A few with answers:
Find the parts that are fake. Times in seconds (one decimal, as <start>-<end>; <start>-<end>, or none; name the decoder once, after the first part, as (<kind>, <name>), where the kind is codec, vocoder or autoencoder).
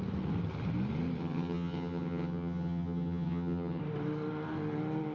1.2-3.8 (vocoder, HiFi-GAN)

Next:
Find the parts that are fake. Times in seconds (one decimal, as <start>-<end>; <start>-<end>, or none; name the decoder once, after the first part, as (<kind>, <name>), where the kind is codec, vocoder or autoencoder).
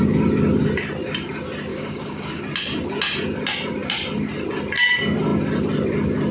1.7-2.4 (codec, DAC)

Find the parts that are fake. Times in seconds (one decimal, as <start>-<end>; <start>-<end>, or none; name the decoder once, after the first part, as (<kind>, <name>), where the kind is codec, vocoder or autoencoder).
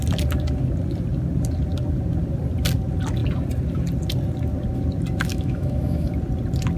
5.3-6.1 (autoencoder, DAC-VAE)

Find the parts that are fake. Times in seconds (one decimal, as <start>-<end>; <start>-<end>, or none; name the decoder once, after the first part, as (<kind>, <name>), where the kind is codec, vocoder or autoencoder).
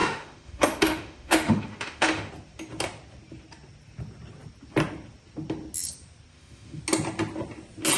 0.0-2.3 (autoencoder, DAC-VAE); 6.3-6.8